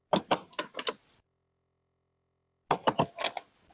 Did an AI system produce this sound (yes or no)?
no